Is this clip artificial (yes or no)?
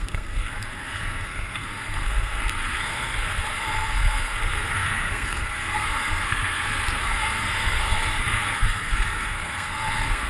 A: yes